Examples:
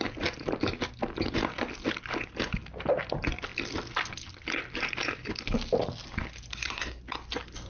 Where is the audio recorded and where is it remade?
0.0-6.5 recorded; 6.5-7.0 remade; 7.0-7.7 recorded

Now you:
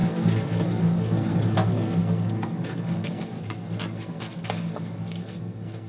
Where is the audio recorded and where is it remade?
0.0-5.9 remade

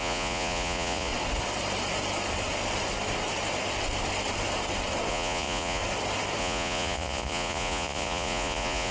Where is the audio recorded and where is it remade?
0.0-1.1 remade; 1.1-5.1 recorded; 5.1-5.8 remade; 5.8-6.4 recorded; 6.4-8.9 remade

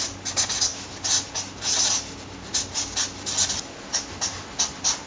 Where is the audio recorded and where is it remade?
0.0-5.1 recorded